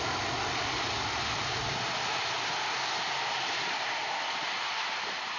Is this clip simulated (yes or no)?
no